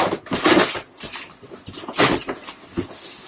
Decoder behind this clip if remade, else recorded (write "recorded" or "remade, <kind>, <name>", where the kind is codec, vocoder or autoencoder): recorded